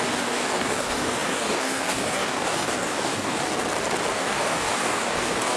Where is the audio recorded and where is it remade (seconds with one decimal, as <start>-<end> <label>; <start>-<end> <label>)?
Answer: 0.0-3.4 remade; 3.4-4.1 recorded; 4.1-5.6 remade